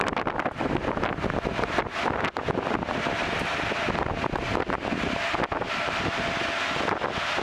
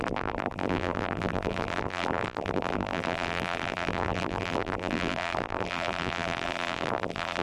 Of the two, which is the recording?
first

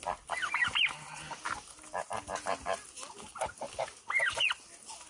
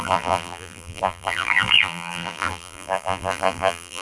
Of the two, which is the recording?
first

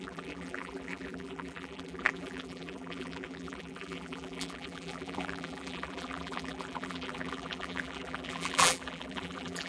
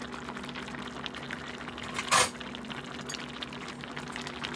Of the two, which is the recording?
second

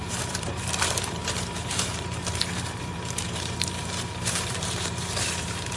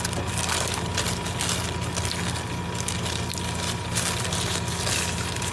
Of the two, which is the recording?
second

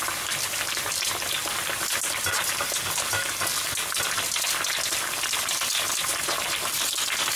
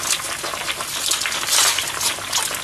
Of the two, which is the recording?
second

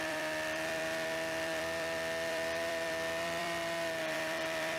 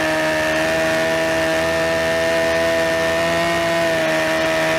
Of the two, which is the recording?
second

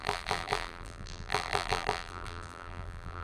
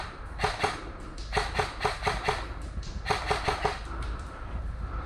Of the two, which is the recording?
second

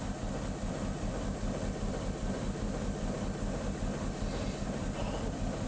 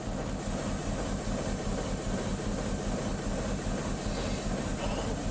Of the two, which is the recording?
second